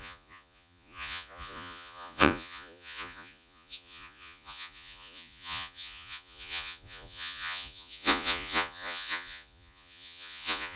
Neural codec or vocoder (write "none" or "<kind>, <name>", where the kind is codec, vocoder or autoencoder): vocoder, Vocos